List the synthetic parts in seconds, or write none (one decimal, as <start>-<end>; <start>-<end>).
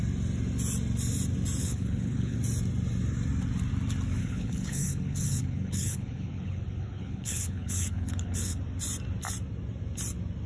1.6-2.4; 4.2-8.6